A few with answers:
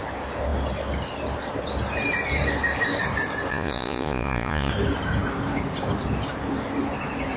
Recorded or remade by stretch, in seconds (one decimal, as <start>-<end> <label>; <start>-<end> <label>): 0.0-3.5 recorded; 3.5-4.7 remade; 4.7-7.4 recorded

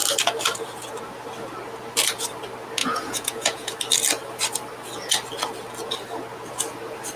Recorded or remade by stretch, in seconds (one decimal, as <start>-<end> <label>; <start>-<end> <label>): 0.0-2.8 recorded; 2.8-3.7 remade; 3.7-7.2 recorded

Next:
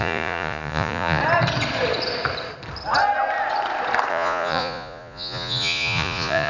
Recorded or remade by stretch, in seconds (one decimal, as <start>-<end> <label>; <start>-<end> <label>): 0.0-1.2 remade; 1.2-4.1 recorded; 4.1-6.5 remade

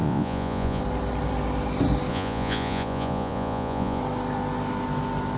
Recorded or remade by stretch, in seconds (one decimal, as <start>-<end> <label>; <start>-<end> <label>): 0.0-0.8 remade; 0.8-2.1 recorded; 2.1-4.0 remade; 4.0-5.4 recorded

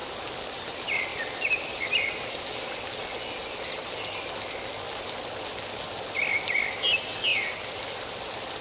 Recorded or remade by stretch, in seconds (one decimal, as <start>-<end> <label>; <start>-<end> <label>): 0.0-8.6 recorded

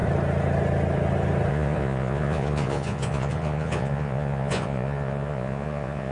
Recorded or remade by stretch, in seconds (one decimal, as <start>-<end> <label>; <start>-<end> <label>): 0.0-1.5 recorded; 1.5-6.1 remade

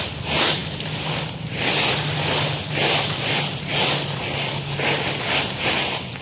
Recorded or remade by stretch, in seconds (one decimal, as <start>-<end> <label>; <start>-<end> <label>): 0.0-6.2 recorded